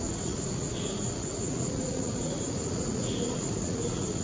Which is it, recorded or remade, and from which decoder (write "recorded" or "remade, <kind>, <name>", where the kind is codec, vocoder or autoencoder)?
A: remade, vocoder, Vocos